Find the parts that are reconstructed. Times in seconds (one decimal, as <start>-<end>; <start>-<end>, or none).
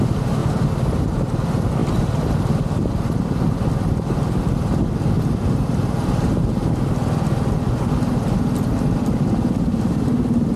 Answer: none